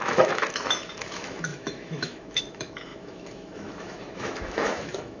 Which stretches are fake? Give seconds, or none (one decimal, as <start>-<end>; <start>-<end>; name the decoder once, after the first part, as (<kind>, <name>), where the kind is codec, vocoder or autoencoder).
0.0-5.2 (autoencoder, DAC-VAE)

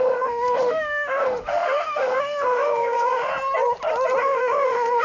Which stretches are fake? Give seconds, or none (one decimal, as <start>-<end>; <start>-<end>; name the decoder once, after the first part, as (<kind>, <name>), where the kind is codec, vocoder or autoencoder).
0.0-3.3 (autoencoder, DAC-VAE); 4.2-5.0

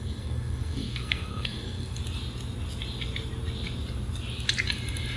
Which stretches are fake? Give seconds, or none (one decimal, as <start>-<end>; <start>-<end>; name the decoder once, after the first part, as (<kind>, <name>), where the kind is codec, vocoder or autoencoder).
0.0-2.0 (codec, SNAC)

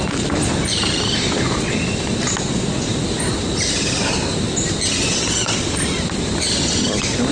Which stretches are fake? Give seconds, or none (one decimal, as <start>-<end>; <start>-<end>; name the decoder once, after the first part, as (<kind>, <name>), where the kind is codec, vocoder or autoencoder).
2.9-7.3 (vocoder, BigVGAN v2)